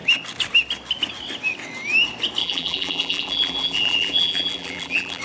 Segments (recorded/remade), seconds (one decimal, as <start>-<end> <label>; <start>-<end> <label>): 0.0-2.4 recorded; 2.4-5.2 remade